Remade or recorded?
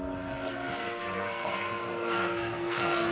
remade